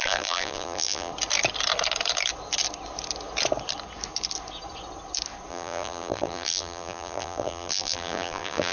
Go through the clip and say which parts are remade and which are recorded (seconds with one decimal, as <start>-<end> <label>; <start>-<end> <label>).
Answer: 0.0-1.1 remade; 1.1-5.5 recorded; 5.5-8.7 remade